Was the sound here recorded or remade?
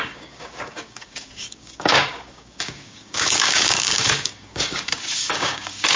remade